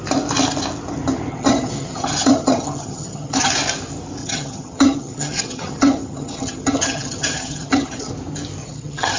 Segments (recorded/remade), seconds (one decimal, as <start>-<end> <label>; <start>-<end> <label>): 0.0-1.3 recorded; 1.3-3.5 remade; 3.5-4.2 recorded; 4.2-8.1 remade; 8.1-8.6 recorded; 8.6-9.2 remade